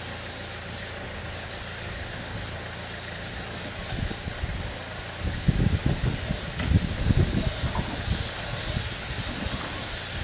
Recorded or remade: recorded